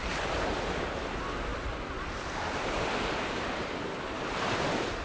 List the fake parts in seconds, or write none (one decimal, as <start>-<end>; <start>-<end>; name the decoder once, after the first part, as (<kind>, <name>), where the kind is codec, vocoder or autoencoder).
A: none